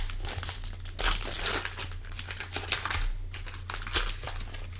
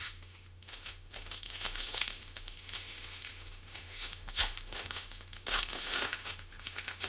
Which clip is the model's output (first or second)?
second